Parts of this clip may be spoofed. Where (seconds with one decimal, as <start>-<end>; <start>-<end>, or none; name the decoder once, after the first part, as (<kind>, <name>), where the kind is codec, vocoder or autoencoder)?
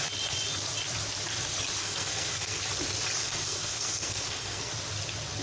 1.8-2.6 (codec, SNAC); 3.2-4.7